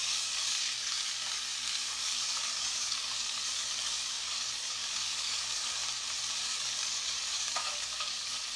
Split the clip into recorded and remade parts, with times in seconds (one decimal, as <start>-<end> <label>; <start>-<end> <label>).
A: 0.0-5.8 remade; 5.8-6.4 recorded; 6.4-8.6 remade